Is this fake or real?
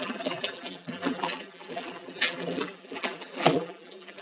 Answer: fake